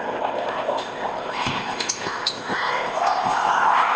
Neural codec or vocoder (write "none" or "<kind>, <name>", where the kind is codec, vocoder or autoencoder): codec, ZipCodec